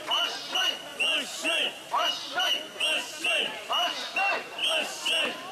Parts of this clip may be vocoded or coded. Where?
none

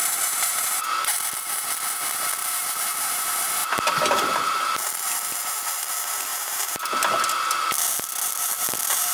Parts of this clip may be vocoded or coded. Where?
0.0-0.8 (vocoder, BigVGAN v2); 2.4-3.1; 3.6-4.9; 6.3-6.8

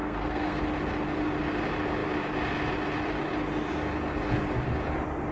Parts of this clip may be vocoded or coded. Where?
0.0-0.6 (codec, SNAC)

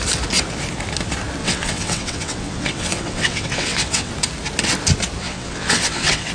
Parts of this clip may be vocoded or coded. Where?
1.4-4.1 (vocoder, WaveNeXt); 5.2-6.3

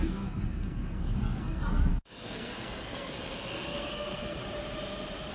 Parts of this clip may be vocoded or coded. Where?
0.0-4.4 (codec, SNAC)

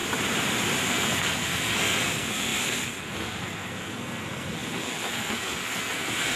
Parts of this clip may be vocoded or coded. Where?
0.9-6.4 (codec, SNAC)

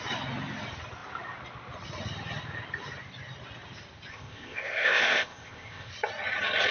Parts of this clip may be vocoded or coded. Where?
4.1-5.9 (codec, ZipCodec)